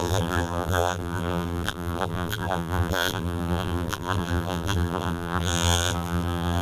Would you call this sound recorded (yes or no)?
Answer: no